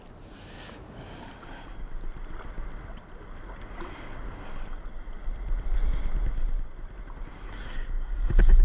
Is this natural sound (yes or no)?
yes